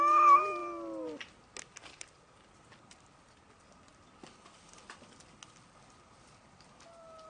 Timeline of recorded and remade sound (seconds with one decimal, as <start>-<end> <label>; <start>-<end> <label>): 0.0-7.3 recorded